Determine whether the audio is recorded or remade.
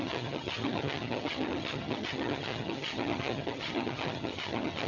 remade